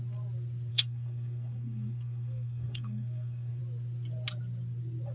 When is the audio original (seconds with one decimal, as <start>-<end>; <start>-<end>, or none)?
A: 0.0-0.7; 3.6-5.1